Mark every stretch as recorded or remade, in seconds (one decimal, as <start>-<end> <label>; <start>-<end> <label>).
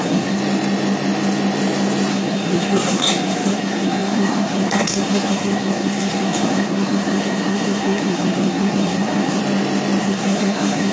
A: 0.0-0.4 remade; 0.4-2.1 recorded; 2.1-9.4 remade; 9.4-10.0 recorded; 10.0-10.9 remade